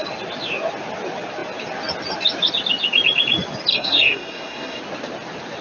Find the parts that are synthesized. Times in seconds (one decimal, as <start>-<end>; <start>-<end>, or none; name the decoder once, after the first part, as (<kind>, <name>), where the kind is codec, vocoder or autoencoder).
3.7-4.8 (codec, SNAC)